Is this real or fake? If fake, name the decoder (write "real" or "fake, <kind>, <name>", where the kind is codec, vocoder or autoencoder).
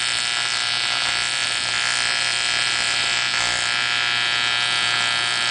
real